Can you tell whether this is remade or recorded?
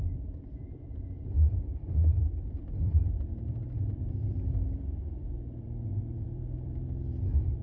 remade